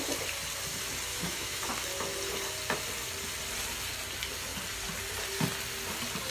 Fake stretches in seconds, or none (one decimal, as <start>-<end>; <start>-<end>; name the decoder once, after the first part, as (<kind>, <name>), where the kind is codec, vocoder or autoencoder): 1.1-1.7 (autoencoder, DAC-VAE)